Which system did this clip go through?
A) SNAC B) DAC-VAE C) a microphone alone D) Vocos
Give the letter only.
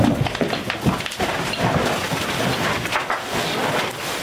C